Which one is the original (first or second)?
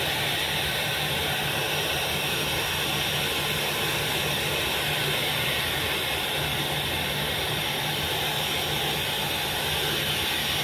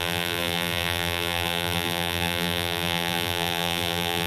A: first